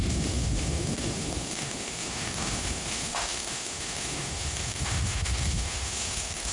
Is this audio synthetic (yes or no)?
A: yes